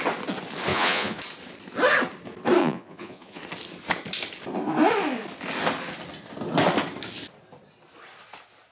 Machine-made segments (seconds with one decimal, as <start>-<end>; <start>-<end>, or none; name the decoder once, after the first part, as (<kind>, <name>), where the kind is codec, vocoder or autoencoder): 0.7-1.2 (vocoder, Vocos); 2.6-3.4